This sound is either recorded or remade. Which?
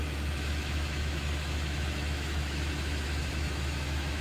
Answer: remade